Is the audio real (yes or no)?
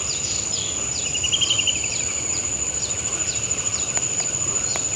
yes